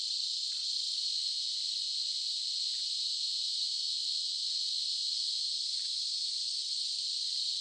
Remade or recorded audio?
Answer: recorded